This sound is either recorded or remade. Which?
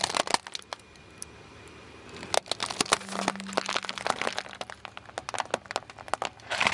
recorded